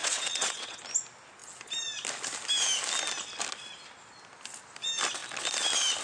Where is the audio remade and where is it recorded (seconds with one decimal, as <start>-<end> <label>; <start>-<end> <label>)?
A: 0.0-0.8 remade; 0.8-6.0 recorded